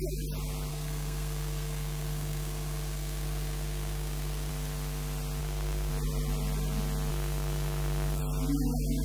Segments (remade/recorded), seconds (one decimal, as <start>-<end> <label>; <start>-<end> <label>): 0.0-0.7 recorded; 0.7-4.5 remade; 4.5-5.4 recorded; 5.4-5.9 remade; 5.9-7.1 recorded; 7.1-8.2 remade; 8.2-9.0 recorded